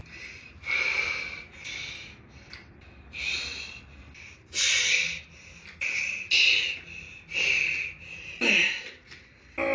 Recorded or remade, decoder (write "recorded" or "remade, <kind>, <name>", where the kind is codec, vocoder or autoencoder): recorded